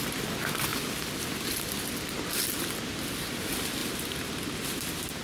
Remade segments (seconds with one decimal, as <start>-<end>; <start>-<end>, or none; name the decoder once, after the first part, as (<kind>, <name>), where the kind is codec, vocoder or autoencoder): 3.8-4.8 (vocoder, BigVGAN v2)